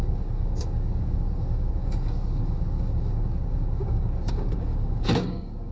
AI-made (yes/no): yes